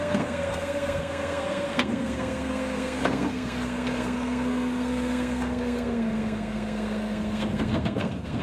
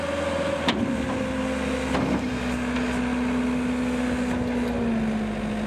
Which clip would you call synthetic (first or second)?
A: first